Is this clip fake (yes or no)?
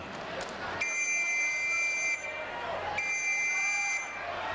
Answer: no